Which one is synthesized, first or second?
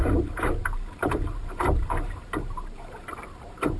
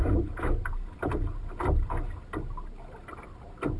first